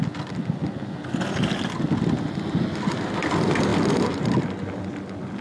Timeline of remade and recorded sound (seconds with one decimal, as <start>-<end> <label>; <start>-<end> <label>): 0.0-5.4 recorded